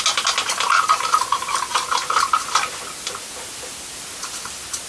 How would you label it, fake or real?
real